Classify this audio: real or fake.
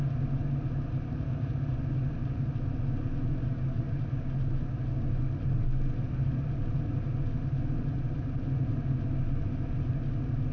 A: real